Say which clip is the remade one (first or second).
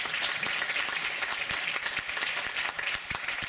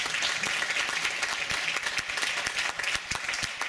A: first